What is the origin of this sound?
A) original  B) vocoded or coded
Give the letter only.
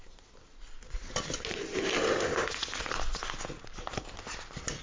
A